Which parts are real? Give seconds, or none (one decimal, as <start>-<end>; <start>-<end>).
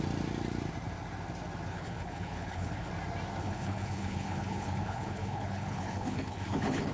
0.0-1.7; 2.9-3.4